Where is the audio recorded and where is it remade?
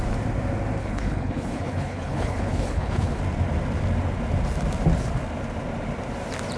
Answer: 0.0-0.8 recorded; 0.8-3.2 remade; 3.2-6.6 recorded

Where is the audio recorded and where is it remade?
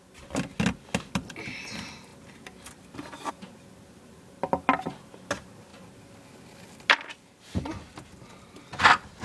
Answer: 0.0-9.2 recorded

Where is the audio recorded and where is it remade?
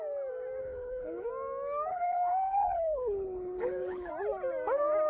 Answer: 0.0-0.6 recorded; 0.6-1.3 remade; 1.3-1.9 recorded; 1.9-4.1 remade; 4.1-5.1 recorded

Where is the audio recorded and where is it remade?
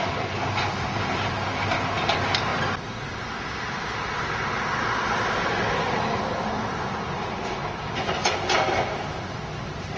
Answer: 0.0-10.0 recorded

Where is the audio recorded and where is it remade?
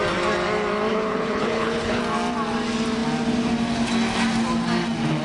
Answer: 0.0-0.9 recorded; 0.9-2.0 remade; 2.0-5.2 recorded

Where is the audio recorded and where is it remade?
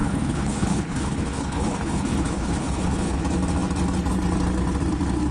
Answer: 0.0-3.2 remade; 3.2-5.3 recorded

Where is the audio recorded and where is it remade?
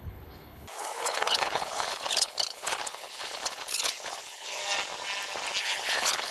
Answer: 0.0-4.6 remade; 4.6-5.6 recorded; 5.6-6.3 remade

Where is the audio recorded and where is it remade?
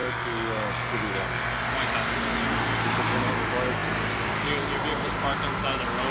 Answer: 0.0-6.1 recorded